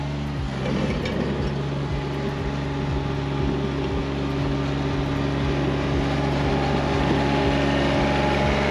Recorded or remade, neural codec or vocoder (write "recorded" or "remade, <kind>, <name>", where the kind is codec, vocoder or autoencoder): recorded